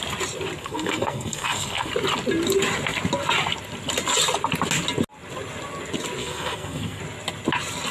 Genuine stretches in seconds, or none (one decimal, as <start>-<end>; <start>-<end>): 0.0-0.6; 1.9-6.2; 7.0-7.9